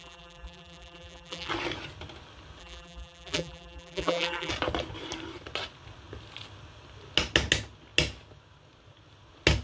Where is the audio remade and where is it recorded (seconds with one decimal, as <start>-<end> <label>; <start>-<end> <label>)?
0.0-1.5 remade; 1.5-2.6 recorded; 2.6-4.5 remade; 4.5-9.6 recorded

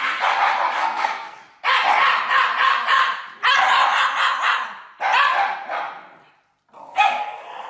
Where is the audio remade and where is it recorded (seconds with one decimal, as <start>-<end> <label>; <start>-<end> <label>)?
0.0-0.8 recorded; 0.8-1.4 remade; 1.4-6.8 recorded; 6.8-7.7 remade

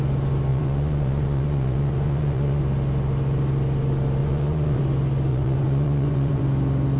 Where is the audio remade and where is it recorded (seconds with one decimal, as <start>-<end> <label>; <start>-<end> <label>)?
0.0-0.5 recorded; 0.5-2.6 remade; 2.6-4.2 recorded; 4.2-4.8 remade; 4.8-5.3 recorded; 5.3-6.4 remade; 6.4-7.0 recorded

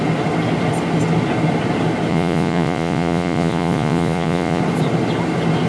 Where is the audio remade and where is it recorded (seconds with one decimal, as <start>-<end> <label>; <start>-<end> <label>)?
0.0-2.1 recorded; 2.1-4.6 remade; 4.6-5.7 recorded

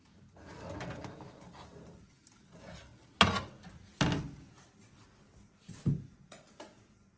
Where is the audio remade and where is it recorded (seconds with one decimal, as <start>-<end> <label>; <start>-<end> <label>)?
0.0-7.2 recorded

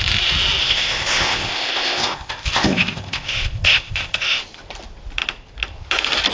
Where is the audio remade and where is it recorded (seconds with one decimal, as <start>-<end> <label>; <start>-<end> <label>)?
0.0-0.6 recorded; 0.6-4.4 remade; 4.4-6.3 recorded